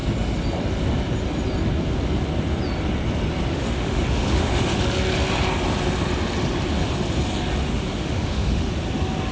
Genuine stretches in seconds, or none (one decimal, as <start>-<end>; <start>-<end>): 0.0-3.5; 4.8-7.6; 8.7-9.3